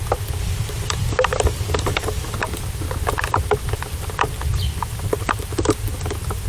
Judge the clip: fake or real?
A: real